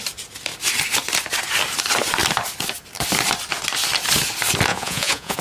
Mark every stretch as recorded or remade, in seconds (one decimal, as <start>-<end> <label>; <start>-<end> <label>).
0.0-4.7 recorded; 4.7-5.4 remade